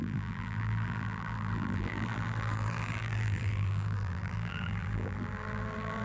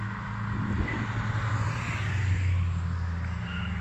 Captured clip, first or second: second